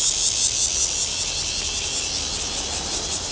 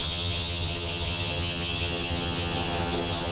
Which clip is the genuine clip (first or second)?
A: first